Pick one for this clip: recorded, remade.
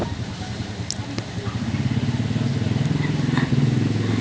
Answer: recorded